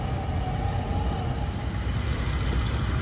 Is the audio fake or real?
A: real